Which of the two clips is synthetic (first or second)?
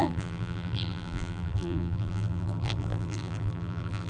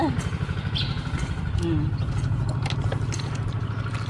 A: first